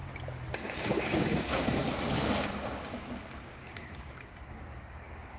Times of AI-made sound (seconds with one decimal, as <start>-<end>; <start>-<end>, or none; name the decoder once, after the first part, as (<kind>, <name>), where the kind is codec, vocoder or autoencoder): 0.5-5.4 (codec, DAC)